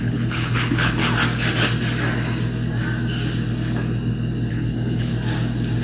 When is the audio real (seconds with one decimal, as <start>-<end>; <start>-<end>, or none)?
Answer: 1.0-4.5; 5.1-5.8